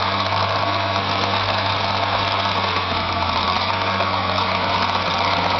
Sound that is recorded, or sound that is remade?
remade